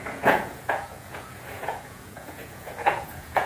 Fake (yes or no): yes